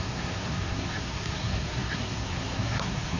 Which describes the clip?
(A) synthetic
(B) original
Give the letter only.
A